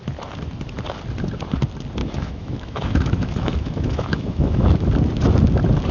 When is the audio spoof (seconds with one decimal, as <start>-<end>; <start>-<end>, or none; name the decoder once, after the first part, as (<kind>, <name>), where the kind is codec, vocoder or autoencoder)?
2.0-4.7 (autoencoder, DAC-VAE)